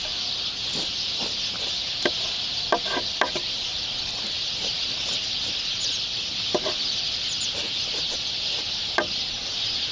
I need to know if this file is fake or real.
real